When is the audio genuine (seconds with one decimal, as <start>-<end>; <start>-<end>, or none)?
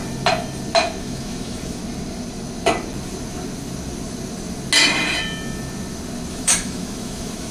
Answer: 0.0-1.0; 1.8-6.3